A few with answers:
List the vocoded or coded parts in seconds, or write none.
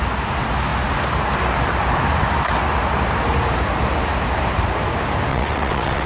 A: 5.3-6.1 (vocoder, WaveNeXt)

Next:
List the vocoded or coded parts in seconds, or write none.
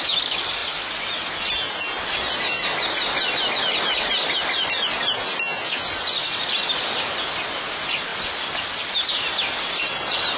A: none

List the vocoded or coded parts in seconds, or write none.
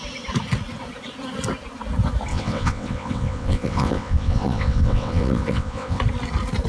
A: 2.3-6.0 (vocoder, WaveNeXt)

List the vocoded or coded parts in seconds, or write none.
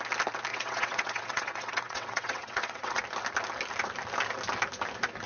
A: 0.5-3.0 (vocoder, WaveNeXt)